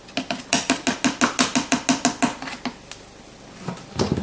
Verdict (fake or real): real